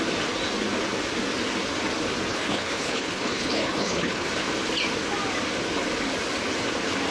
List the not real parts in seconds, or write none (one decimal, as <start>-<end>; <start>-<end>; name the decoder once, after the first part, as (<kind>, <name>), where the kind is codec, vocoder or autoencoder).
2.3-4.3 (codec, HILCodec)